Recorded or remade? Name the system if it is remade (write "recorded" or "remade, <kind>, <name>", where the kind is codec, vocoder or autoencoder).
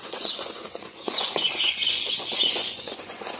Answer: remade, vocoder, Vocos